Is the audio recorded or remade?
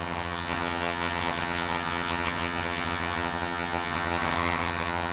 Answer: remade